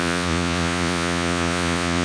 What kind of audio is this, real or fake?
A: fake